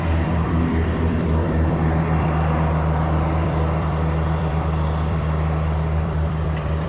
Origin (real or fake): fake